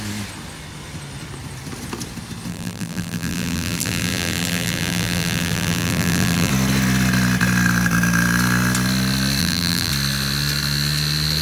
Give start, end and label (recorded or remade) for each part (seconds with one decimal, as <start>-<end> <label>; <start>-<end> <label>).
0.0-2.5 recorded; 2.5-6.5 remade; 6.5-9.4 recorded; 9.4-9.9 remade; 9.9-11.4 recorded